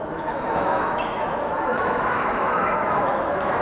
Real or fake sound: fake